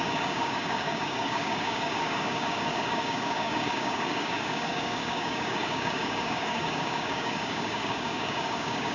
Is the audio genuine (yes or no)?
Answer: no